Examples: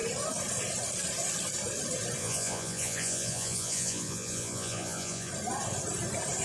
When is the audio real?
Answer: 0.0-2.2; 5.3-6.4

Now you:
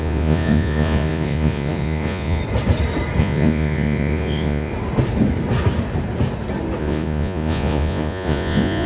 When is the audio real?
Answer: 2.4-3.2; 4.7-6.8

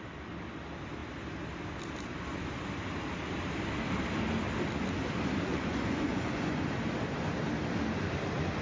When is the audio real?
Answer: 0.0-5.5; 6.6-8.6